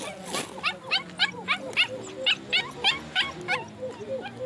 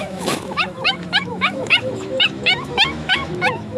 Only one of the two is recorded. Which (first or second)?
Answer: first